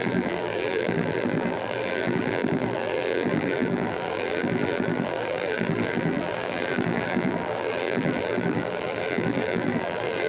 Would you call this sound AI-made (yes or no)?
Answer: yes